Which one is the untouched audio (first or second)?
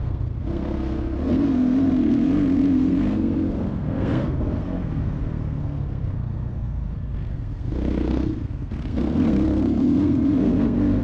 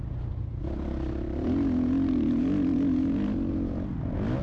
second